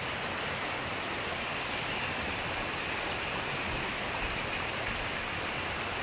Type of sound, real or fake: real